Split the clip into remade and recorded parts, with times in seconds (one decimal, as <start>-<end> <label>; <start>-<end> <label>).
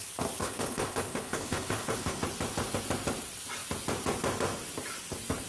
0.0-0.4 recorded; 0.4-2.2 remade; 2.2-5.5 recorded